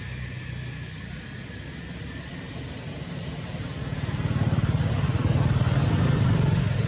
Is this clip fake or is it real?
real